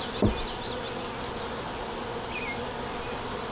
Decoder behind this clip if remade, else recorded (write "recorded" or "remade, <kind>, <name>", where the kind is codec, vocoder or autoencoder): recorded